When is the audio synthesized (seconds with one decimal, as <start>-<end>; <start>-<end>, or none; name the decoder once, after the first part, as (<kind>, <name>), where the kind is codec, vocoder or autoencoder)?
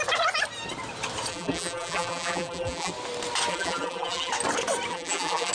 1.3-2.9 (vocoder, BigVGAN v2); 3.5-4.3; 4.9-5.5